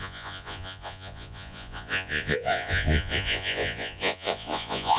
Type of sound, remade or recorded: remade